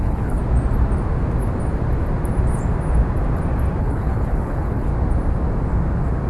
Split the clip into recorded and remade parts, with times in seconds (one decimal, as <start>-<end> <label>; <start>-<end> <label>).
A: 0.0-0.4 remade; 0.4-3.8 recorded; 3.8-4.9 remade; 4.9-6.3 recorded